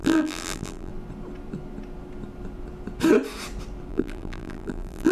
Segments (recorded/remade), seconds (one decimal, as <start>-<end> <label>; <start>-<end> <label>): 0.0-0.9 remade; 0.9-3.9 recorded; 3.9-5.1 remade